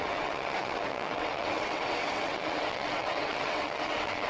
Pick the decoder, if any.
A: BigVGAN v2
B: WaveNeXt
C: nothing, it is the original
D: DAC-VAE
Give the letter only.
B